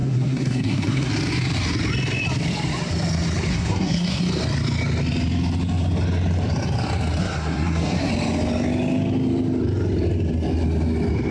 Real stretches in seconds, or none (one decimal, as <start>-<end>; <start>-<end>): 1.1-3.5; 4.2-7.2; 8.1-11.3